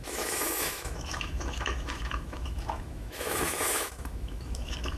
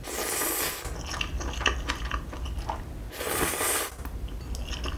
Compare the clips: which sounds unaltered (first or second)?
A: second